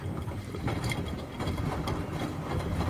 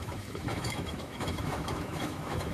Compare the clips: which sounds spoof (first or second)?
second